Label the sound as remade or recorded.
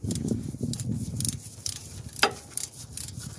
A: recorded